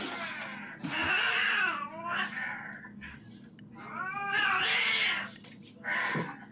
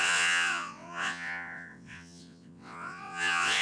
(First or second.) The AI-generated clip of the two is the second